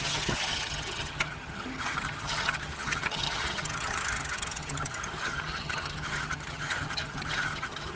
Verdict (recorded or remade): remade